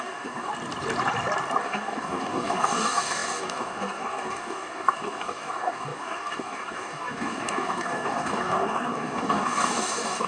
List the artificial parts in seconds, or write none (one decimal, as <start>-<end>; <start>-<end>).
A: 0.0-0.5; 1.6-10.3